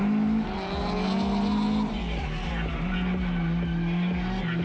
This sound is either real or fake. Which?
real